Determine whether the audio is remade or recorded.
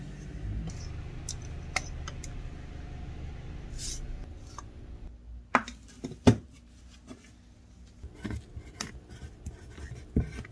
recorded